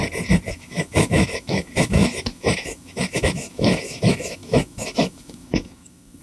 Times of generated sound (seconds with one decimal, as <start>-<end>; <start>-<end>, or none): 0.5-6.2